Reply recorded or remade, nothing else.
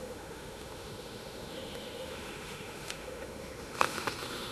remade